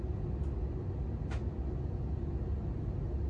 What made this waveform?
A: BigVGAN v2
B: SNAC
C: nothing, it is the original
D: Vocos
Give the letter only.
C